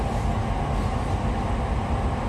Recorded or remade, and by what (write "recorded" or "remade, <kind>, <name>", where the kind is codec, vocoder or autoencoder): recorded